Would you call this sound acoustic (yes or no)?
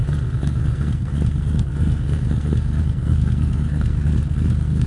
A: no